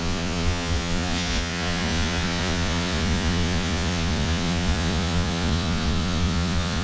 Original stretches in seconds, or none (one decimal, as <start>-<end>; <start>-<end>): none